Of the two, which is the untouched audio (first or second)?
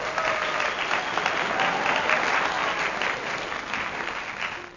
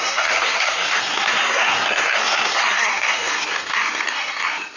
first